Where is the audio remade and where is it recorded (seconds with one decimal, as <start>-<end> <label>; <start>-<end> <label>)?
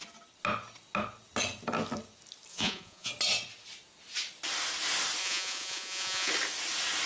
0.0-2.5 recorded; 2.5-3.1 remade; 3.1-5.2 recorded; 5.2-6.3 remade; 6.3-7.1 recorded